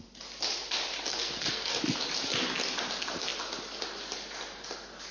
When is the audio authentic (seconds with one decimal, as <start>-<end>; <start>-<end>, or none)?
0.0-1.1; 1.8-5.1